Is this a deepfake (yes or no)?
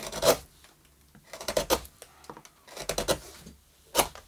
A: no